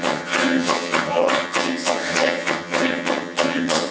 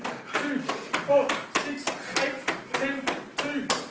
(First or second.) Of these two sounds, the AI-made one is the first